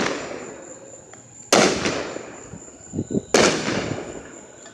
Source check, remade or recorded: recorded